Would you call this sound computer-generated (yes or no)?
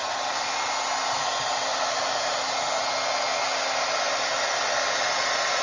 no